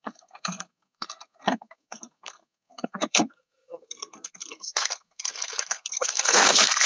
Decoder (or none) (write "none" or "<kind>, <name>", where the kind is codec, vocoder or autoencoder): codec, SNAC